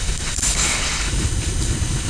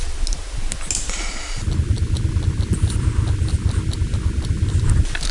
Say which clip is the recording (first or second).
second